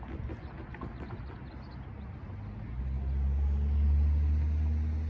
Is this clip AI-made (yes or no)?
no